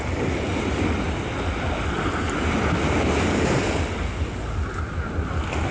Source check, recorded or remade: recorded